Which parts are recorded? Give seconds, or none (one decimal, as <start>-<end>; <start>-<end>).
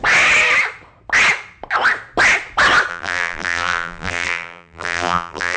0.0-2.9